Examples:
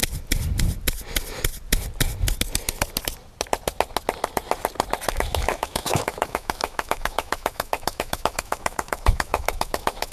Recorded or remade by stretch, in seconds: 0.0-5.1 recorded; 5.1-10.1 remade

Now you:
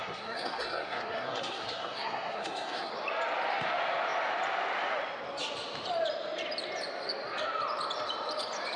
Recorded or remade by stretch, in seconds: 0.0-2.9 remade; 2.9-8.8 recorded

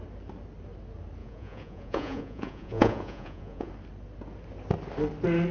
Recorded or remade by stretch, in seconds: 0.0-1.2 recorded; 1.2-3.7 remade; 3.7-5.5 recorded

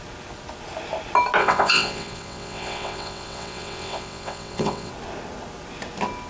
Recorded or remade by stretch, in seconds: 0.0-1.4 recorded; 1.4-4.9 remade; 4.9-6.3 recorded

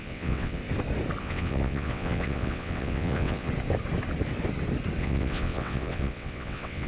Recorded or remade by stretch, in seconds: 0.0-0.6 remade; 0.6-1.2 recorded; 1.2-3.5 remade; 3.5-5.0 recorded; 5.0-6.9 remade

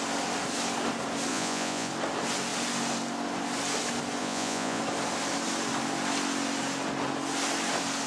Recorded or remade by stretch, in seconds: 0.0-1.3 recorded; 1.3-1.9 remade; 1.9-4.2 recorded; 4.2-4.8 remade; 4.8-8.1 recorded

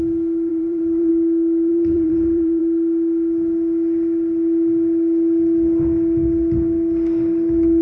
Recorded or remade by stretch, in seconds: 0.0-0.5 recorded; 0.5-1.1 remade; 1.1-1.7 recorded; 1.7-2.6 remade; 2.6-7.8 recorded